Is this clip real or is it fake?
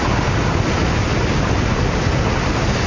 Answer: real